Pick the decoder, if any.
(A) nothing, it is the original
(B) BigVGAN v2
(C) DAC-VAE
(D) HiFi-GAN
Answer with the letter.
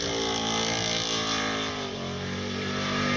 A